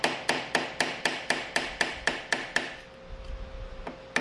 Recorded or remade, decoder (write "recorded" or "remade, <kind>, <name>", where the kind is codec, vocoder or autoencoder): recorded